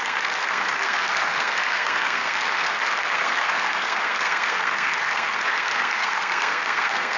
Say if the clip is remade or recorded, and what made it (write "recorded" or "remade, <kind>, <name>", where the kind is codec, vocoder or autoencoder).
remade, codec, SNAC